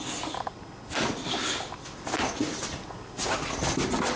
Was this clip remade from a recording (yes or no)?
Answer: no